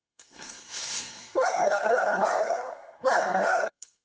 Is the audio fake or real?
fake